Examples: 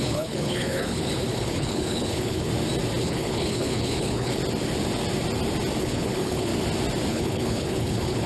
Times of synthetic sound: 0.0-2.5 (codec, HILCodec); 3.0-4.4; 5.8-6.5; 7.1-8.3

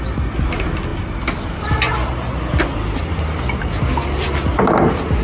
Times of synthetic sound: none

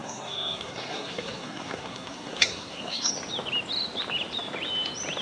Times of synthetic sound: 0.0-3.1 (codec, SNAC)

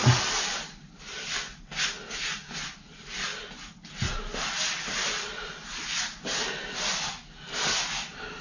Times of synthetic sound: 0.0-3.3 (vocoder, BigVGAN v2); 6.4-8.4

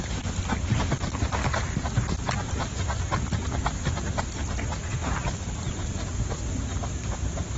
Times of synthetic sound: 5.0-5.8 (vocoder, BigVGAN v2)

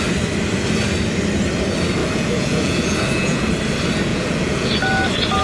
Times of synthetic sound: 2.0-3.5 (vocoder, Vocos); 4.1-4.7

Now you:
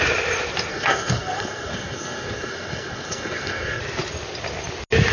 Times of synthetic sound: 0.7-3.8 (codec, SNAC)